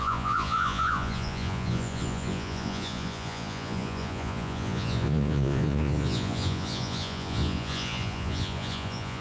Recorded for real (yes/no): no